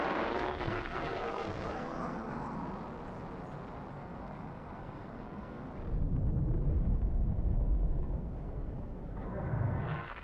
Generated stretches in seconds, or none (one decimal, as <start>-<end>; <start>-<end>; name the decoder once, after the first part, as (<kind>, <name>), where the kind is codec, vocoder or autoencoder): 0.0-2.6 (codec, SNAC); 3.9-5.7; 6.7-10.2